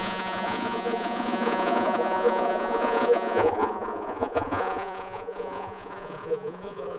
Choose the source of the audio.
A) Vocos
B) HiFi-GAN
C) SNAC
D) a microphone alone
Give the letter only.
A